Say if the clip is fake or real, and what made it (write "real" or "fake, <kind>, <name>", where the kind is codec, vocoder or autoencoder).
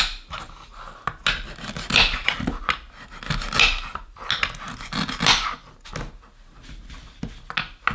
real